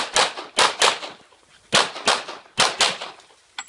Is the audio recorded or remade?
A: recorded